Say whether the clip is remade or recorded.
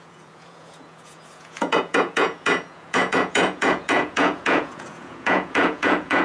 remade